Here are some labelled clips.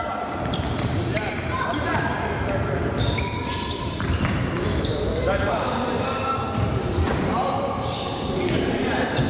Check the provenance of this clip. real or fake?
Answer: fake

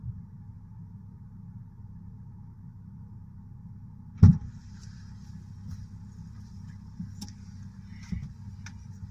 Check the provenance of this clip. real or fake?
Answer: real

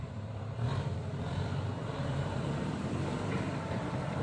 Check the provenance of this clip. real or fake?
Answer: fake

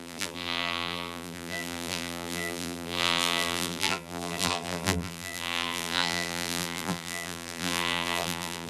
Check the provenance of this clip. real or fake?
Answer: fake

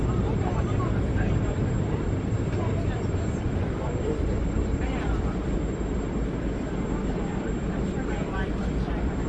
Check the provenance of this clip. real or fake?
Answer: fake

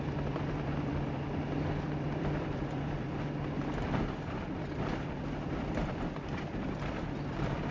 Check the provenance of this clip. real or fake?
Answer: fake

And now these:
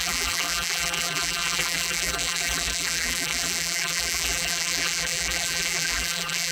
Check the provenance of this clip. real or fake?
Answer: fake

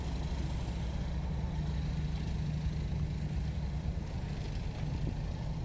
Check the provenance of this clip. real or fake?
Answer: real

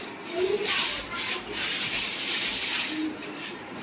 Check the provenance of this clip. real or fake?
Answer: fake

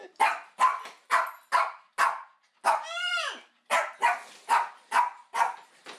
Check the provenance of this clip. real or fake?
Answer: real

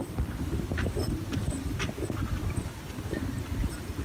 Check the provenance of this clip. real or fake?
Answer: fake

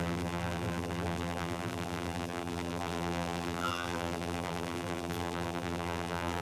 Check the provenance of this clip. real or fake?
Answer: fake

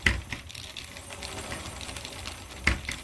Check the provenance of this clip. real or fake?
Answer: fake